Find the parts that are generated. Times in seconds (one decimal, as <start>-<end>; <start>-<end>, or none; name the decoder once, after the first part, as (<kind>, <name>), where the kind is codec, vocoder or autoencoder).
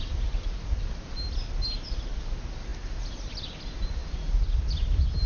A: none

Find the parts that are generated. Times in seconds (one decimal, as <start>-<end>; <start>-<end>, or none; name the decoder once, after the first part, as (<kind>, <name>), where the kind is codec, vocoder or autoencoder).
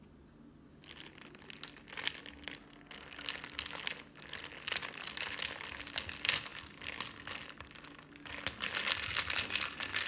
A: none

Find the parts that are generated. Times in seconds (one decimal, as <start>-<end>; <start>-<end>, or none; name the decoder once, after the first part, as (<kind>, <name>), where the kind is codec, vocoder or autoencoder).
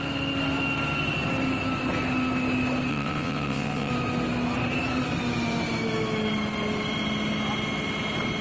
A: 2.9-3.9 (vocoder, WaveNeXt)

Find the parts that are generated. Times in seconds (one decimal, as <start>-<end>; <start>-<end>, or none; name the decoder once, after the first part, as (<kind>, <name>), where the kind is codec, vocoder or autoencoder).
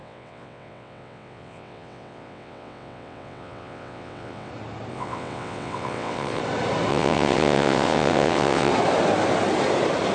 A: 0.0-4.5 (vocoder, WaveNeXt); 4.9-6.4; 6.9-8.7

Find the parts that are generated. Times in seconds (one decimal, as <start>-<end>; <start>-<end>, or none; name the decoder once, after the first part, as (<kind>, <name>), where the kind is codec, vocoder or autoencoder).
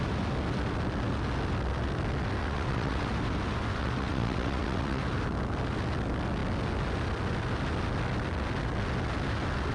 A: 2.4-3.1 (vocoder, WaveNeXt); 3.8-5.0